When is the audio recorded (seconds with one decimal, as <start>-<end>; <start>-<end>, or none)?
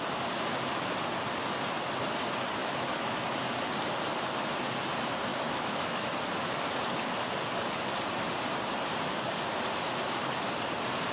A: 0.0-2.6; 3.2-5.3; 6.1-11.1